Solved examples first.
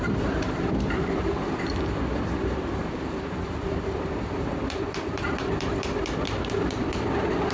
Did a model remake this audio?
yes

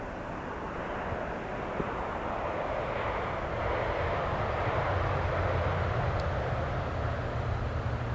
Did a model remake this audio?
no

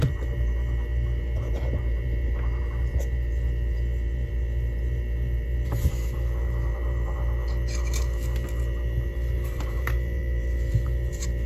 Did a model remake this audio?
yes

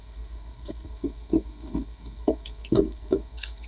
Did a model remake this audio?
yes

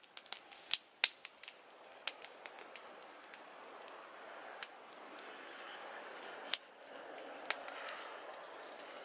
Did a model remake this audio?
no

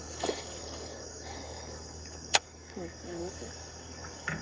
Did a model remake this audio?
yes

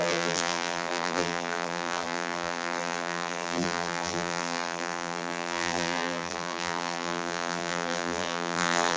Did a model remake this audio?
yes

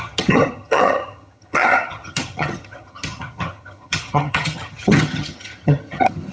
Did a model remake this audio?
yes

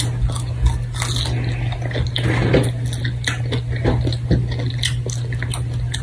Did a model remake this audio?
no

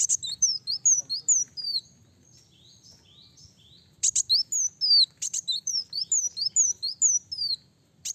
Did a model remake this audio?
no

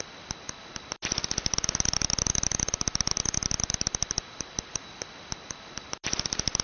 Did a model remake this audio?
no